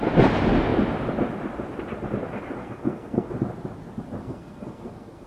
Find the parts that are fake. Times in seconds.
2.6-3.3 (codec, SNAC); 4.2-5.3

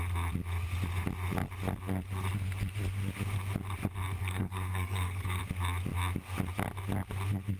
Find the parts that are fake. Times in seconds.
4.2-5.4 (codec, SNAC)

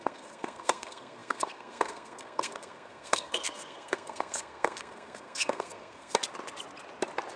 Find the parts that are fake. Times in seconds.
0.0-6.2 (codec, SNAC)